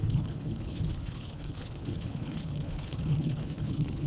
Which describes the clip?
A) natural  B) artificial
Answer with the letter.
B